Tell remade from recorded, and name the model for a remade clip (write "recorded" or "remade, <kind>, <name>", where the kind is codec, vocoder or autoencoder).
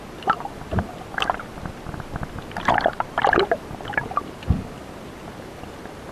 recorded